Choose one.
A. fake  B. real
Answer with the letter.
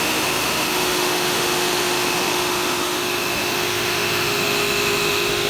A